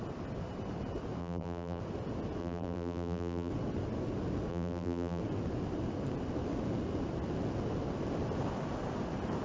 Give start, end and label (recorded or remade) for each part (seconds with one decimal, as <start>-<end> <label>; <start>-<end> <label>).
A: 0.0-1.2 recorded; 1.2-1.8 remade; 1.8-2.4 recorded; 2.4-3.5 remade; 3.5-4.5 recorded; 4.5-5.2 remade; 5.2-9.4 recorded

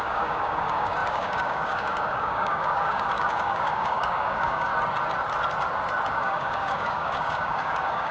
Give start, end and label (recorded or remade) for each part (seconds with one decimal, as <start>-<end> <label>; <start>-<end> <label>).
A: 0.0-4.7 remade; 4.7-6.1 recorded; 6.1-8.1 remade

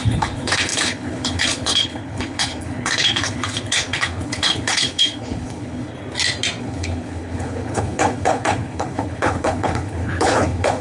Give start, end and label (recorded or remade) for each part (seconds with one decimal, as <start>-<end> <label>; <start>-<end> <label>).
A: 0.0-5.9 remade; 5.9-6.6 recorded; 6.6-10.8 remade

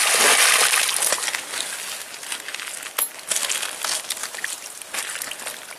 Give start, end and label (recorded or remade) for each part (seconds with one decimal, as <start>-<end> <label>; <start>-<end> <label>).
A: 0.0-4.2 recorded; 4.2-4.8 remade; 4.8-5.8 recorded